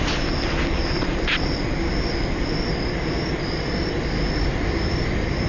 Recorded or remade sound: recorded